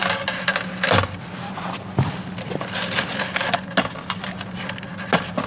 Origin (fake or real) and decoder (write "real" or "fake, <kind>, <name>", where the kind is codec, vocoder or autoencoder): real